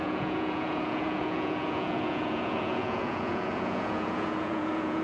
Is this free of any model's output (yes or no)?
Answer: no